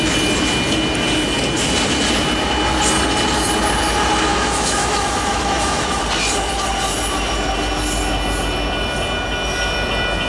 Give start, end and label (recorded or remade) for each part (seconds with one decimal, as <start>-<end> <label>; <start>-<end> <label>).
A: 0.0-4.3 recorded; 4.3-6.0 remade; 6.0-10.3 recorded